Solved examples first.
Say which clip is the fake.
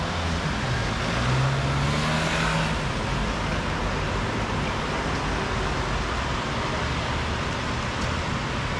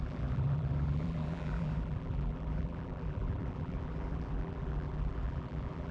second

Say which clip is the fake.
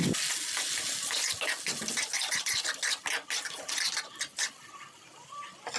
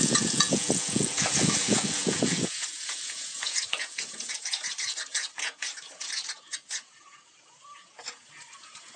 second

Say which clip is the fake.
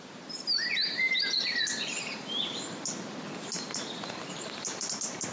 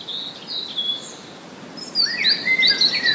first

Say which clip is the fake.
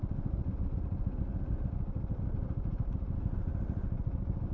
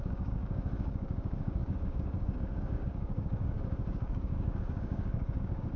second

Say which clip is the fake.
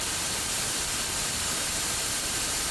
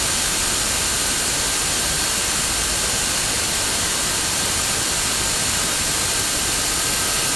first